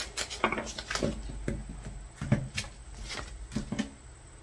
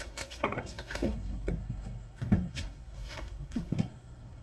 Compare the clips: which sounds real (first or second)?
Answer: first